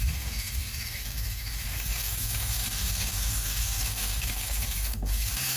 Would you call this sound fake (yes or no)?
yes